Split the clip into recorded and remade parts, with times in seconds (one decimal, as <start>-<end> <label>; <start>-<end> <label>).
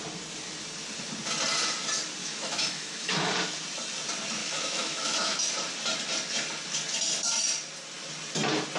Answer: 0.0-2.2 recorded; 2.2-3.3 remade; 3.3-4.4 recorded; 4.4-5.5 remade; 5.5-8.8 recorded